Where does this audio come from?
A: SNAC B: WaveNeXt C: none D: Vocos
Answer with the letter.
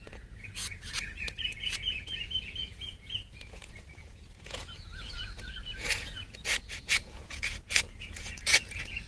D